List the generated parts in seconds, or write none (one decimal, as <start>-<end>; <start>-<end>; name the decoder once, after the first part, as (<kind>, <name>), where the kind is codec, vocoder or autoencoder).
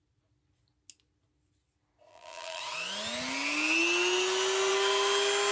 2.1-2.6 (vocoder, BigVGAN v2)